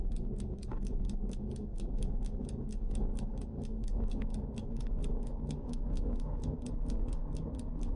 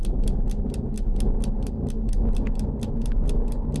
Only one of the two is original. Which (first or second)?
second